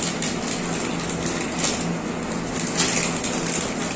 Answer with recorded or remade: recorded